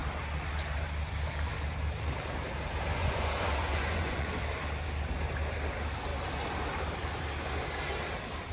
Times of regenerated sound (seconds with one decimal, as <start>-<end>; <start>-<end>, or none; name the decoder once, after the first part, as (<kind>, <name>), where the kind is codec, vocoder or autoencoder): 2.9-4.3 (vocoder, Vocos)

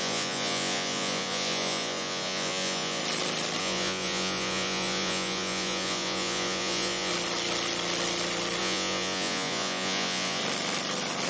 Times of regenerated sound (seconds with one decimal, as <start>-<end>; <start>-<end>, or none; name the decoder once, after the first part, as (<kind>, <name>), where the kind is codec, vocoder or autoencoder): 0.0-3.0 (vocoder, Vocos); 3.6-7.1; 8.6-10.4